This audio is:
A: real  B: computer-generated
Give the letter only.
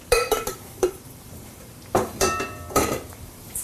B